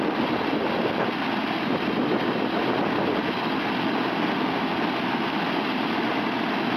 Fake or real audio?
real